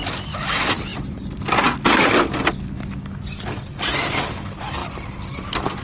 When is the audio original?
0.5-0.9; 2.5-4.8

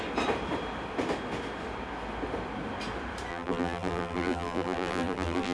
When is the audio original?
0.0-3.3

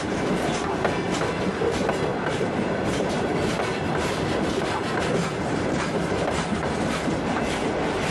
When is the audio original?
0.0-2.1; 6.9-8.1

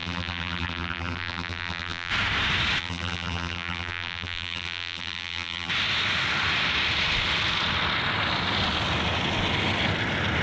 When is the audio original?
2.1-2.8; 5.7-10.4